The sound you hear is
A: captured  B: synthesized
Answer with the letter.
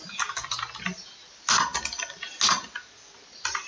A